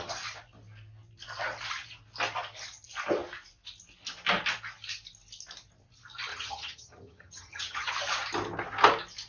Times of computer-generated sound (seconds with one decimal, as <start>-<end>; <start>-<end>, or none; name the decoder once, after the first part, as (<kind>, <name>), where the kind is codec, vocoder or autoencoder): 6.3-7.9 (vocoder, HiFi-GAN)

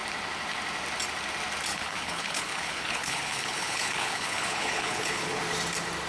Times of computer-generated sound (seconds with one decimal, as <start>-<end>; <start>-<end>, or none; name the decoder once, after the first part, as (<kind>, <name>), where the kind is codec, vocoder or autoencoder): 1.7-5.4 (codec, HILCodec)

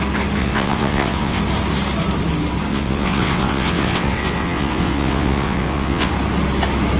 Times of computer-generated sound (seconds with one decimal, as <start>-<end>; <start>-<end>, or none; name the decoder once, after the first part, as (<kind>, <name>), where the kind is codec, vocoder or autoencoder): 0.4-1.4 (vocoder, WaveNeXt); 2.7-6.1

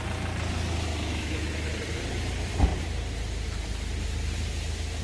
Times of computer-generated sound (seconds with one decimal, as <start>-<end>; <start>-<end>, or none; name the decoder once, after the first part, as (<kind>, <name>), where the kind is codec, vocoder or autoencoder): 0.9-2.0 (autoencoder, DAC-VAE)

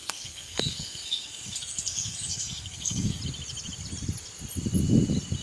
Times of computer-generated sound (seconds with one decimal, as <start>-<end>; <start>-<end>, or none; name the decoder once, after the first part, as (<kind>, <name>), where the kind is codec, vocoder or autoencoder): 0.0-3.2 (codec, SNAC)